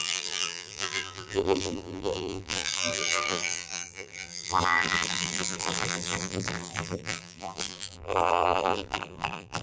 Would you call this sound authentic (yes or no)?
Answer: no